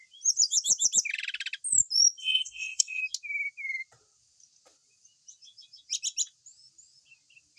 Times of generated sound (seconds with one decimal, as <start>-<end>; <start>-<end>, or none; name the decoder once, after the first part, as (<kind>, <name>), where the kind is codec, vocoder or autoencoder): 2.2-3.0 (codec, SNAC)